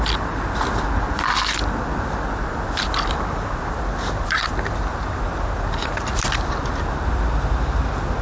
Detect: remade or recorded recorded